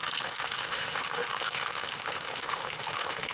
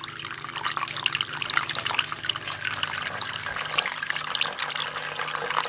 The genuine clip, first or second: second